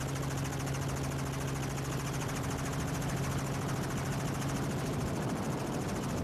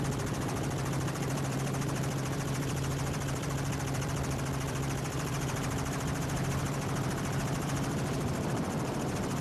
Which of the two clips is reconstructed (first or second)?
second